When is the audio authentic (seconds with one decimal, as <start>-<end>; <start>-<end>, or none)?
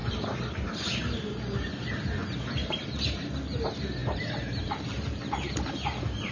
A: 0.7-4.0; 5.5-6.3